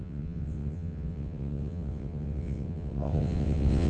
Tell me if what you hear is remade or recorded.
remade